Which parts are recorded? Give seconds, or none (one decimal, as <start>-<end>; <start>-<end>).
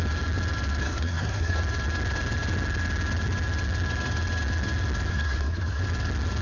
0.0-0.8; 1.6-5.1; 5.8-6.4